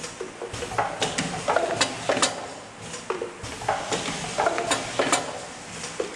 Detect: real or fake real